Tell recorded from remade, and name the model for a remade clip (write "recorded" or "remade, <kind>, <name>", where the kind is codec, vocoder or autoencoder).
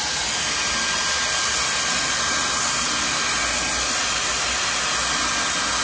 recorded